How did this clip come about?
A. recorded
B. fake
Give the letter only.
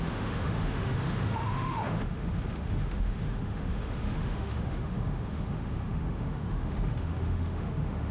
B